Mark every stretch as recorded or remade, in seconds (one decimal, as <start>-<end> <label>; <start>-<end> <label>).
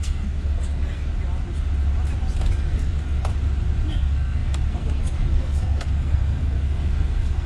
0.0-1.1 remade; 1.1-2.5 recorded; 2.5-3.3 remade; 3.3-3.9 recorded; 3.9-7.5 remade